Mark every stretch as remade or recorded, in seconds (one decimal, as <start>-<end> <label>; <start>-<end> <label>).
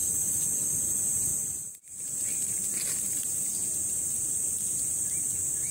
0.0-1.3 recorded; 1.3-2.0 remade; 2.0-5.7 recorded